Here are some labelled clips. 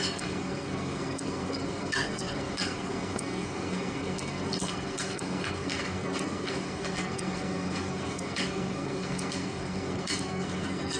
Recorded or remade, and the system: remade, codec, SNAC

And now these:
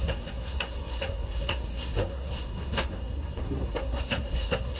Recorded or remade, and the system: remade, codec, SNAC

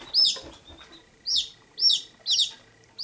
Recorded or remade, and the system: recorded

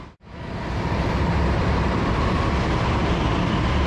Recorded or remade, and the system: recorded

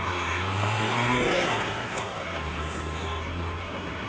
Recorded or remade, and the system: remade, codec, SNAC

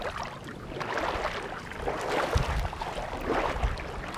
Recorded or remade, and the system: recorded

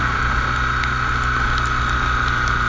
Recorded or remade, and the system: recorded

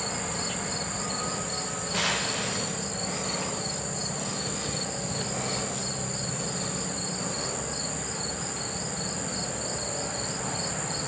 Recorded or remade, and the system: recorded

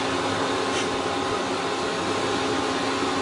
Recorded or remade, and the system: recorded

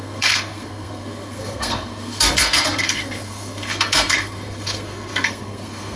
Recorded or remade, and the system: remade, codec, SNAC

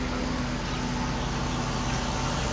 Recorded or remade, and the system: recorded